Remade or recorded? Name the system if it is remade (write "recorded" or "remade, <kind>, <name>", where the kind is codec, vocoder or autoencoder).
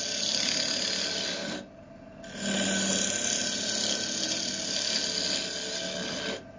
recorded